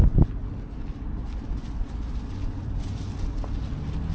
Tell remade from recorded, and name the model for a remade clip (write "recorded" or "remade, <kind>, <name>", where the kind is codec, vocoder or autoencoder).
recorded